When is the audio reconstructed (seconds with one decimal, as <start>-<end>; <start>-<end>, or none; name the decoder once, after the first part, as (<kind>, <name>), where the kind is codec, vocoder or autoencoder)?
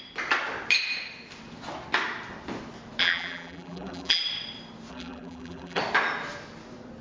3.0-4.2 (vocoder, BigVGAN v2); 4.9-5.8